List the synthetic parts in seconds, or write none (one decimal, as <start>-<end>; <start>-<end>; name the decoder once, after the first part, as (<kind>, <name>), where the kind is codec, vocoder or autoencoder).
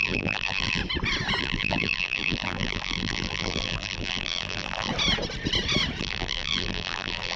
0.0-0.8 (vocoder, BigVGAN v2); 1.4-4.9; 6.0-7.4